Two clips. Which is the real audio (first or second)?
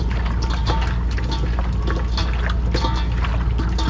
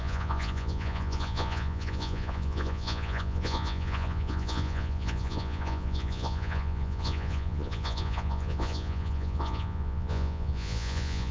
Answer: first